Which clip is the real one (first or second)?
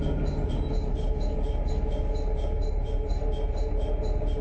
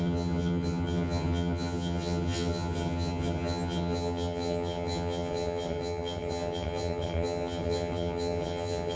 first